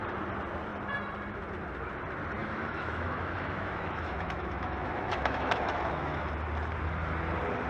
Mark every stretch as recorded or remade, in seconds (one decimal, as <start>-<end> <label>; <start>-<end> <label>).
0.0-2.4 recorded; 2.4-6.3 remade; 6.3-7.7 recorded